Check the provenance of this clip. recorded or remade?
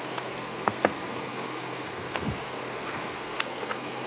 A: remade